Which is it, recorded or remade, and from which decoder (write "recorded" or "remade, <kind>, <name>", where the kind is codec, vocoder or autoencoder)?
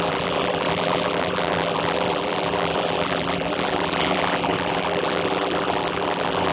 remade, vocoder, BigVGAN v2